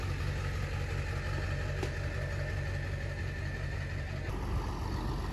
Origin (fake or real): real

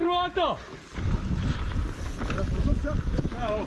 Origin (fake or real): real